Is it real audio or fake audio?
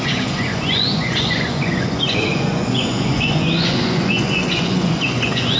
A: fake